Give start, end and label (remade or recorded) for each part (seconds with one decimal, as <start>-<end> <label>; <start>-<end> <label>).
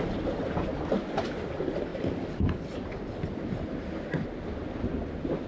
0.0-5.5 recorded